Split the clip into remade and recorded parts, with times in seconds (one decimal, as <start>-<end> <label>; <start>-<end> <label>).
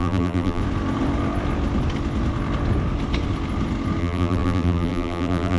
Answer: 0.0-0.6 remade; 0.6-4.0 recorded; 4.0-5.6 remade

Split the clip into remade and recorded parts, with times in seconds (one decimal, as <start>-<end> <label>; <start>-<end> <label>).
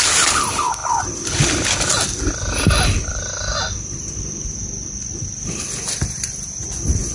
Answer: 0.0-7.1 recorded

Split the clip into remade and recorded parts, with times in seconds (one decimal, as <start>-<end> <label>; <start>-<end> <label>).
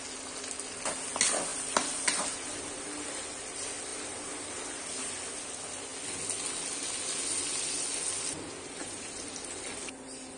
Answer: 0.0-10.4 recorded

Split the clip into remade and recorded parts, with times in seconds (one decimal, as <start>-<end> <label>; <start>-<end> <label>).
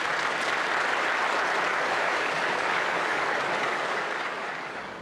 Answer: 0.0-1.7 recorded; 1.7-5.0 remade